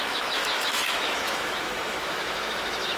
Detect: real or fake fake